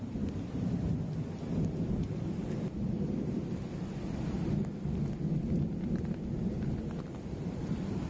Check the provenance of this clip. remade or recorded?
recorded